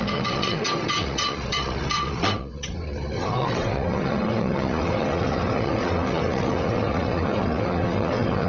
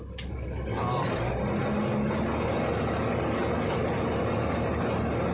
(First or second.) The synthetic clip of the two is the first